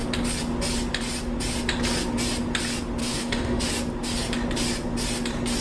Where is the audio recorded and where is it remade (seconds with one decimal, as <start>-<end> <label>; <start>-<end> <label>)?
0.0-3.0 recorded; 3.0-3.6 remade; 3.6-5.6 recorded